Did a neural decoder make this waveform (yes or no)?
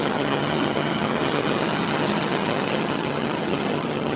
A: yes